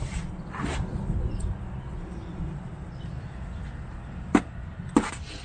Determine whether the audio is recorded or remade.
recorded